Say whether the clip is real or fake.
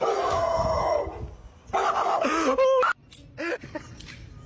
real